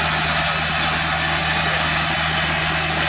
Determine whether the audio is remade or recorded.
recorded